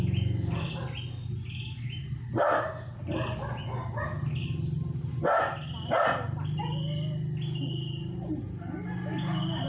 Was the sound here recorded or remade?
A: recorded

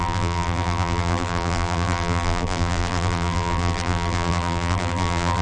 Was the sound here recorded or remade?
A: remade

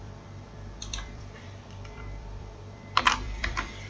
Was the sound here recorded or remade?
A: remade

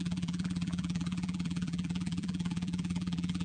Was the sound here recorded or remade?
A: remade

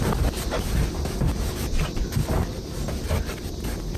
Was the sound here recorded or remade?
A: recorded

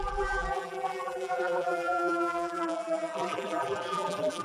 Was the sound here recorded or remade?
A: remade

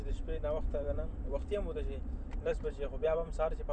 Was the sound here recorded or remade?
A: remade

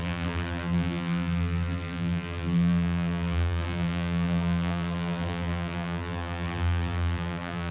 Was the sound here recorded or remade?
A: remade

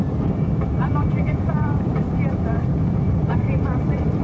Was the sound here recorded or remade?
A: remade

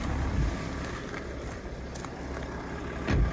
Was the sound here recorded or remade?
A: recorded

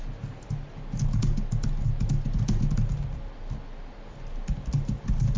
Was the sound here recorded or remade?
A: recorded